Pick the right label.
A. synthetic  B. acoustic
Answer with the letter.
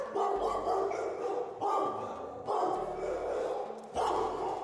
B